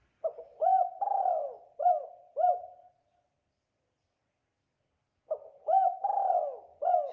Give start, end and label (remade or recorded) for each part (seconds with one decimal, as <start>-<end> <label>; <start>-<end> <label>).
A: 0.0-7.1 recorded